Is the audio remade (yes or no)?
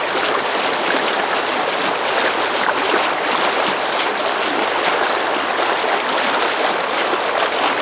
no